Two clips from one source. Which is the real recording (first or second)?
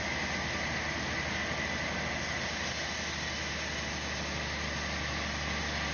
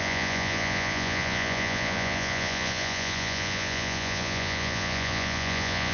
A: first